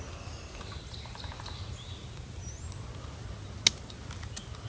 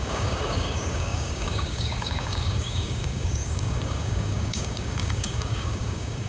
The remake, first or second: second